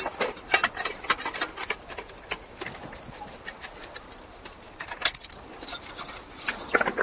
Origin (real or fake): real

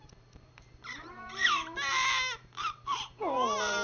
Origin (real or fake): fake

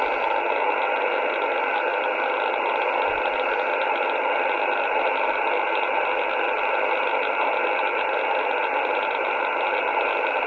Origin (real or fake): real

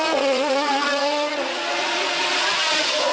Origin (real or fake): fake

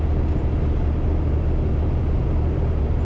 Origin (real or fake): real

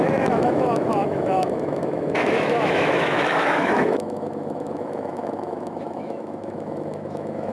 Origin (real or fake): fake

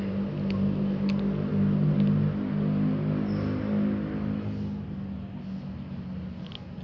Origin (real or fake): real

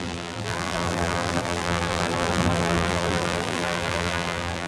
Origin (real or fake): fake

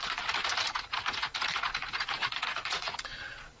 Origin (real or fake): fake